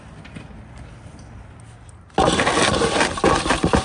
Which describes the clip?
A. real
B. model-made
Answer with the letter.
A